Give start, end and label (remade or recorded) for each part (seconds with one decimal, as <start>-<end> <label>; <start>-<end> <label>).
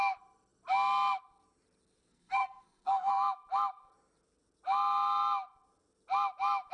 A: 0.0-2.1 recorded; 2.1-3.1 remade; 3.1-6.7 recorded